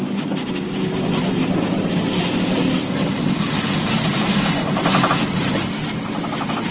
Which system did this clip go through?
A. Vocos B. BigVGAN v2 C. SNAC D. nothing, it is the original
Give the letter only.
D